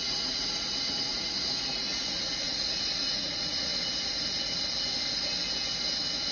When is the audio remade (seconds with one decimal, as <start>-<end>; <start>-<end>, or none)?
0.0-3.7